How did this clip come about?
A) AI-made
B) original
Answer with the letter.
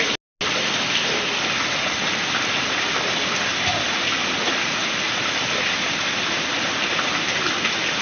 B